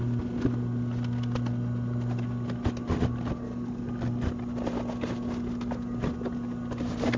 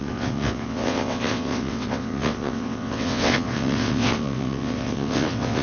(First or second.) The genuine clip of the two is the first